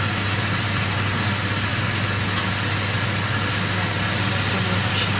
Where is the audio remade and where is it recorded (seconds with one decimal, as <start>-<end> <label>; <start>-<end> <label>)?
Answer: 0.0-5.2 recorded